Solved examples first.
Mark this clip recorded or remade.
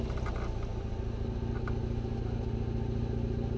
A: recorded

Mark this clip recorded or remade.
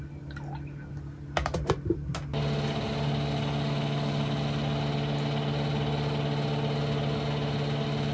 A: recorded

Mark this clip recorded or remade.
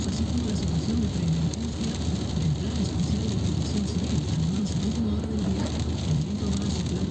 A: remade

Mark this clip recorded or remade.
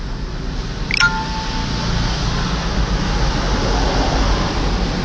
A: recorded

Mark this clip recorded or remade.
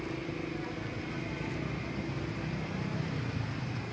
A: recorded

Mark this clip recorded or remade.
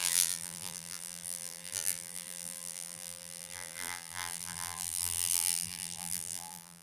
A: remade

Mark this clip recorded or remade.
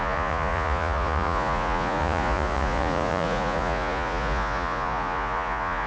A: remade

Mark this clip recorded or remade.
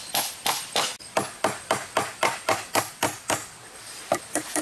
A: recorded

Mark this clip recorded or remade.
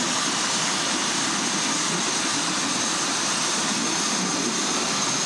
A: recorded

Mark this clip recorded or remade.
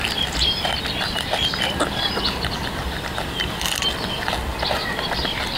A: recorded